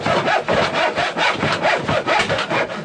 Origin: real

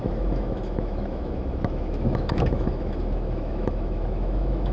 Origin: fake